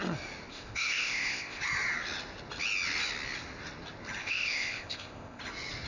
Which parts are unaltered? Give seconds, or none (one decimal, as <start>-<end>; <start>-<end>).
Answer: 0.0-0.5; 1.6-4.2; 5.4-5.9